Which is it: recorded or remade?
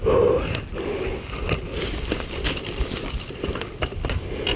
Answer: recorded